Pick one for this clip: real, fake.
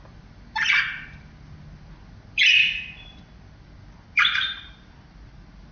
real